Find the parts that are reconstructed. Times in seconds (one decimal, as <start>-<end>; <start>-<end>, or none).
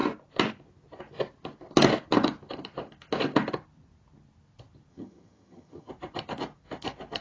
4.9-5.9